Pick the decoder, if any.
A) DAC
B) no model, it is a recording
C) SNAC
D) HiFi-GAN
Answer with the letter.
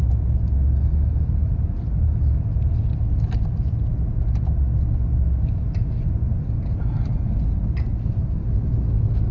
B